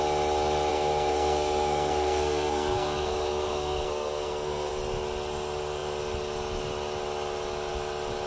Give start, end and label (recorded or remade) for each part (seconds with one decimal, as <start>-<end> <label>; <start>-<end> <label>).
0.0-0.7 recorded; 0.7-4.7 remade; 4.7-8.3 recorded